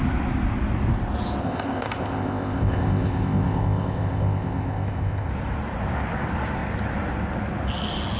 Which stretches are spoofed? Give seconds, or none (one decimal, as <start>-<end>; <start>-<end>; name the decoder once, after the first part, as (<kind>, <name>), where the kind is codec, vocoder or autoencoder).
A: 1.4-5.3 (codec, ZipCodec)